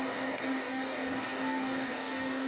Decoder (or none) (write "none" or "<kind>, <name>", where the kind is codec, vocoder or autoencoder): codec, DAC